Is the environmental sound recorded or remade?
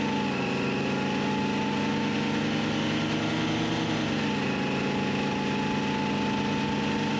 recorded